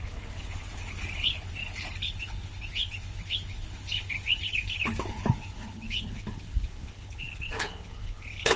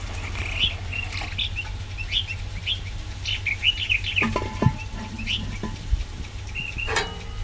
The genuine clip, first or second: second